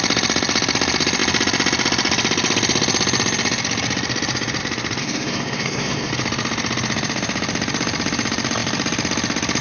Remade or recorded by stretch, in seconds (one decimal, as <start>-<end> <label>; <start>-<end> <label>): 0.0-5.0 recorded; 5.0-6.1 remade; 6.1-9.6 recorded